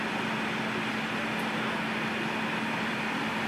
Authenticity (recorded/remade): recorded